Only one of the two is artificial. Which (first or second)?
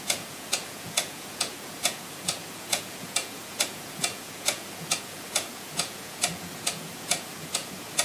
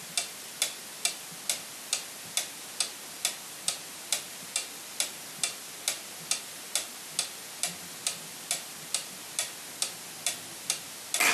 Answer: first